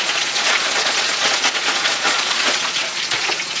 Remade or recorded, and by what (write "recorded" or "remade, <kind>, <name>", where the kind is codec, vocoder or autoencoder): remade, vocoder, Vocos